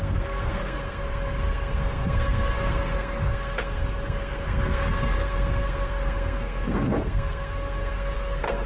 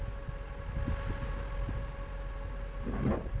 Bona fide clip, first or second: second